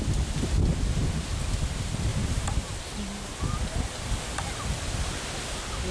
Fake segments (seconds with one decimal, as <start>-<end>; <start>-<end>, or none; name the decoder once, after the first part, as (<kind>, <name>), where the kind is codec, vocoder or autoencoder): none